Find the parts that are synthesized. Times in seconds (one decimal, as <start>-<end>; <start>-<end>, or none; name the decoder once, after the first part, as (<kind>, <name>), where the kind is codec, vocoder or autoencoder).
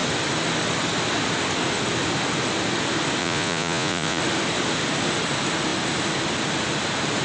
3.2-4.2 (vocoder, Vocos)